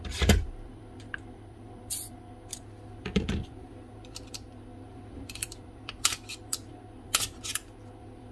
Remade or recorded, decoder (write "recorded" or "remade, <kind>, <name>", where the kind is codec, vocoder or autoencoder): remade, vocoder, BigVGAN v2